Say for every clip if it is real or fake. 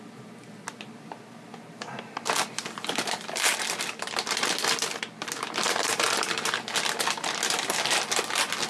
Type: real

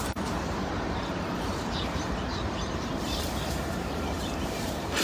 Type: fake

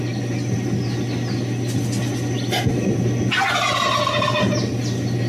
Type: real